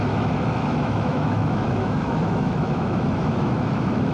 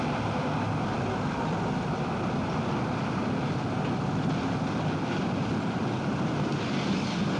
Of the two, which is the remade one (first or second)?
first